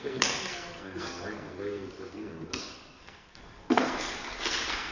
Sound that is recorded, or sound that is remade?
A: remade